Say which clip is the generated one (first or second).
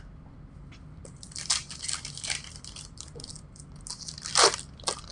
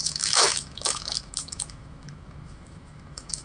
second